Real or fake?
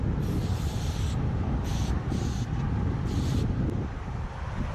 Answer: real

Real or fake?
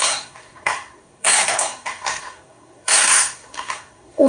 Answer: fake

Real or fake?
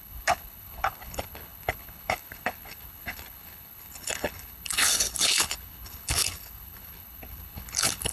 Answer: fake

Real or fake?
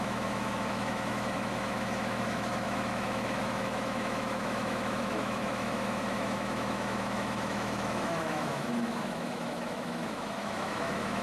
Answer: fake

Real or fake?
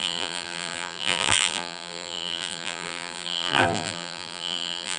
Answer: fake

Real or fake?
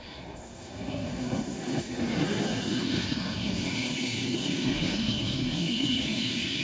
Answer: fake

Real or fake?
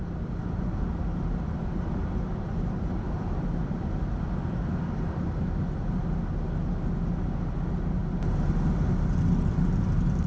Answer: real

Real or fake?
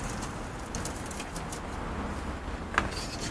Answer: real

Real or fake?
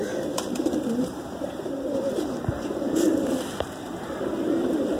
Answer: fake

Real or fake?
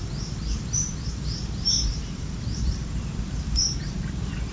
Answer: fake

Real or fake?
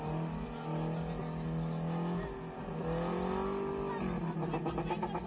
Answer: real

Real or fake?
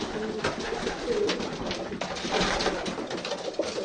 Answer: real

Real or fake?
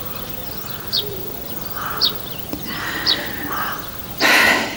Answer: fake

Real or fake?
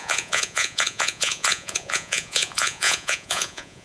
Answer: fake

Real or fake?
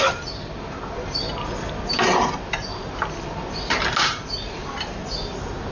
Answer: real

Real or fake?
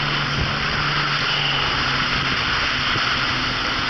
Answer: real